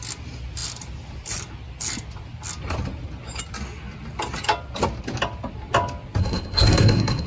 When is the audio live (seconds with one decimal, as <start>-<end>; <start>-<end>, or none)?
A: 0.0-6.2